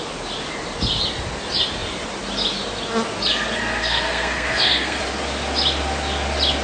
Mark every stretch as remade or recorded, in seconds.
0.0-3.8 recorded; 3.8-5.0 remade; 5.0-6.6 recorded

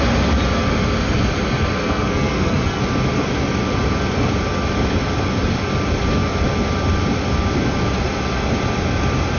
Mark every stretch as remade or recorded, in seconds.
0.0-1.8 recorded; 1.8-2.8 remade; 2.8-9.4 recorded

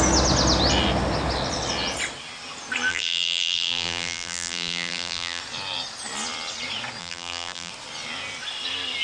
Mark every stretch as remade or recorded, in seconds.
0.0-2.9 recorded; 2.9-5.4 remade; 5.4-7.0 recorded; 7.0-7.7 remade; 7.7-9.0 recorded

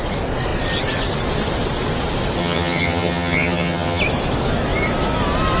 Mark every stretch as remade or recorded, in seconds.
0.0-2.4 recorded; 2.4-4.0 remade; 4.0-5.6 recorded

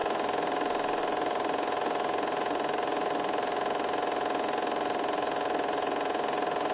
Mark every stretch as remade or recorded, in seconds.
0.0-6.7 recorded

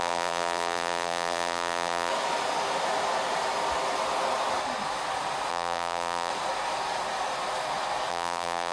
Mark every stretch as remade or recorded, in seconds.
0.0-2.1 remade; 2.1-5.5 recorded; 5.5-6.3 remade; 6.3-8.1 recorded; 8.1-8.7 remade

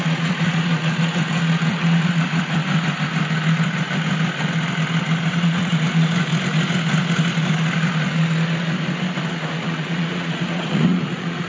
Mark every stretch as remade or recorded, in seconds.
0.0-2.6 remade; 2.6-5.3 recorded; 5.3-6.3 remade; 6.3-9.3 recorded; 9.3-11.5 remade